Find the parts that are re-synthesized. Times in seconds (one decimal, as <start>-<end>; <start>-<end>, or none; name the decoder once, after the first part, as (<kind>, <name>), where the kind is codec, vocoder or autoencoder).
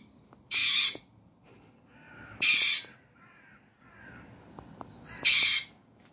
none